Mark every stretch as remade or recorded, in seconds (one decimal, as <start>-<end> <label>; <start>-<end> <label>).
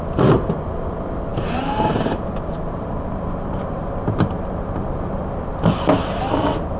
0.0-1.3 recorded; 1.3-5.1 remade; 5.1-6.8 recorded